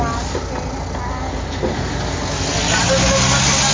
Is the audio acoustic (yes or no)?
yes